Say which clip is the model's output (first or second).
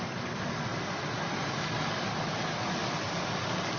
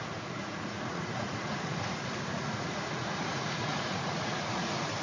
second